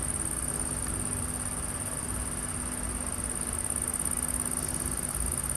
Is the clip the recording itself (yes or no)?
yes